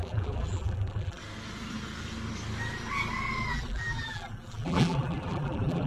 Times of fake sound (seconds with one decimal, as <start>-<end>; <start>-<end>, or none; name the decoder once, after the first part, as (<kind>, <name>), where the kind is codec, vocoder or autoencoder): 0.0-1.2 (vocoder, BigVGAN v2); 3.5-5.9